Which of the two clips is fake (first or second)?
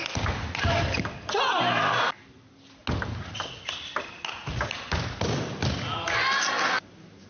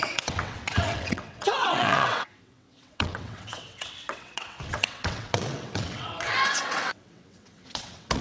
second